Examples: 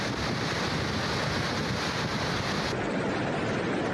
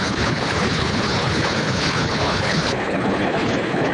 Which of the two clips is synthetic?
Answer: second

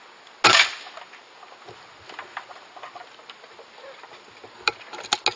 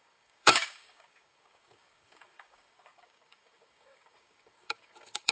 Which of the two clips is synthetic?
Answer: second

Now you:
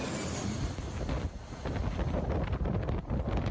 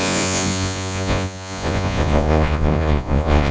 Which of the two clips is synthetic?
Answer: second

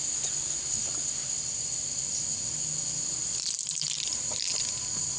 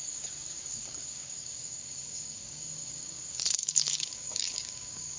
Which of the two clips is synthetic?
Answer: second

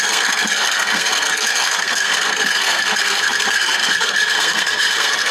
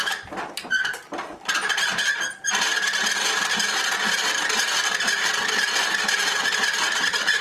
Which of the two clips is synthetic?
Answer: first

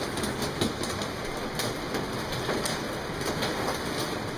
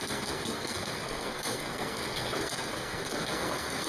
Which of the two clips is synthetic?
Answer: second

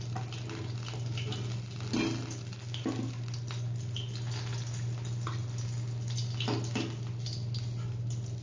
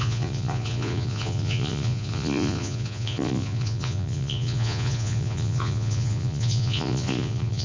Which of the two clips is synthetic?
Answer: second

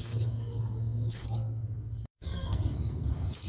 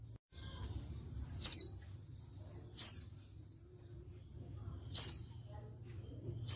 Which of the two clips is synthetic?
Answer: first